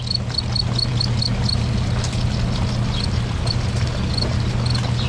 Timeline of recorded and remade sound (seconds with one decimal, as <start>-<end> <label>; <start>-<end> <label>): 0.0-5.1 recorded